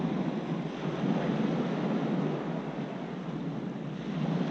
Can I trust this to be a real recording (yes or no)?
yes